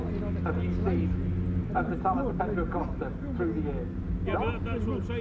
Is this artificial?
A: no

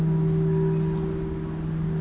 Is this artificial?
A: no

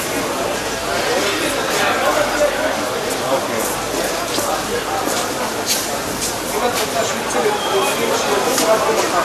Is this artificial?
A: no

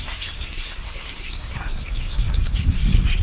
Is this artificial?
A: yes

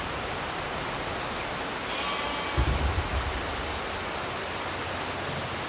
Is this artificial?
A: no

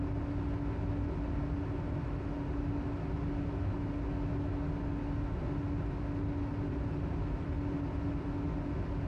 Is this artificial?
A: no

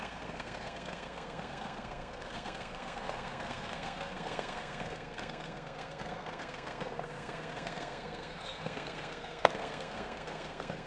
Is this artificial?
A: yes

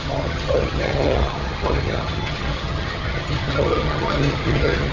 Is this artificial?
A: yes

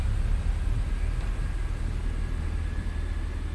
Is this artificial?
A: no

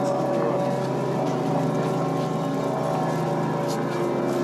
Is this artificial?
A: no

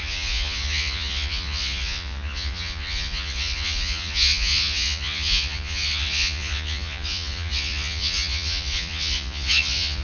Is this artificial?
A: yes